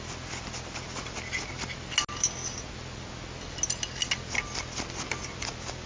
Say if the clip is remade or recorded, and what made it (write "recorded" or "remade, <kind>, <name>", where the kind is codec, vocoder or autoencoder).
recorded